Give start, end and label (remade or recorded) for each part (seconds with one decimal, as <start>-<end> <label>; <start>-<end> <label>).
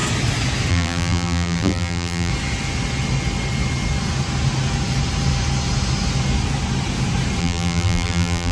0.0-0.7 recorded; 0.7-2.3 remade; 2.3-7.4 recorded; 7.4-8.5 remade